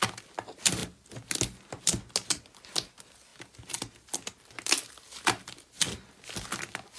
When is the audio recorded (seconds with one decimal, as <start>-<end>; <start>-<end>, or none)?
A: 0.0-7.0